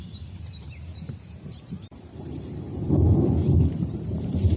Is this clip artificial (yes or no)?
yes